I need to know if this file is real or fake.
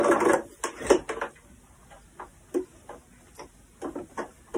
real